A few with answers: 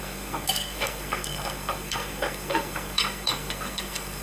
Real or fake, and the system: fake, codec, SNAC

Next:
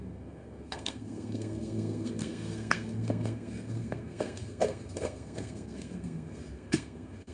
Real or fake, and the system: fake, codec, SNAC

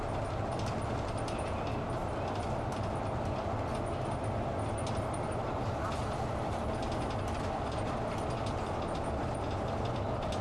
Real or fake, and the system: real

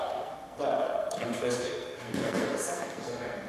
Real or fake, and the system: fake, codec, SNAC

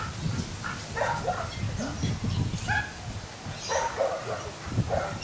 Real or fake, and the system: real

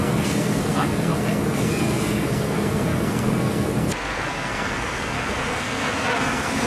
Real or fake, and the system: fake, codec, SNAC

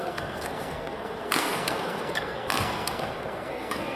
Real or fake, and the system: fake, codec, SNAC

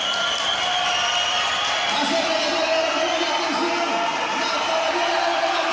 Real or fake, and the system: real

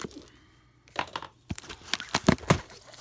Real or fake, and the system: real